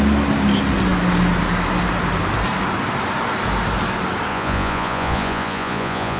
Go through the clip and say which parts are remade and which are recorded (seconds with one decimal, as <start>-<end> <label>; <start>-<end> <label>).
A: 0.0-4.3 recorded; 4.3-6.2 remade